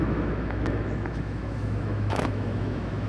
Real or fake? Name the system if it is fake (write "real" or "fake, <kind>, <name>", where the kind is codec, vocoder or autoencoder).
fake, autoencoder, DAC-VAE